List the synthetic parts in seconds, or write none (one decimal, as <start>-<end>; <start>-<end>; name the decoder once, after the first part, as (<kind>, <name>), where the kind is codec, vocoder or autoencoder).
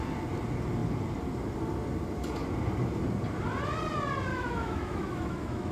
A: 4.3-5.7 (autoencoder, DAC-VAE)